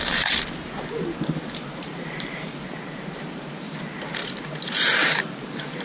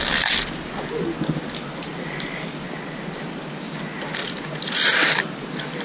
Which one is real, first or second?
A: second